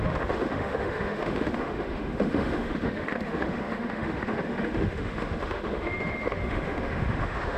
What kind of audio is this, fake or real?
fake